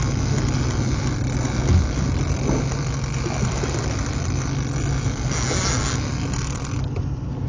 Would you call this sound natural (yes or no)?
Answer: yes